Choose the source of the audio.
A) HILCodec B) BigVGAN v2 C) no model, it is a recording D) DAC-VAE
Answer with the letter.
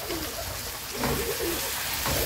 C